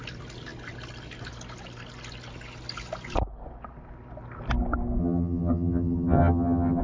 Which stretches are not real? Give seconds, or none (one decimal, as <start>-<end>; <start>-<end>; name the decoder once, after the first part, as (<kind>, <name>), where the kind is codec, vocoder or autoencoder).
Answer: 5.0-6.8 (vocoder, HiFi-GAN)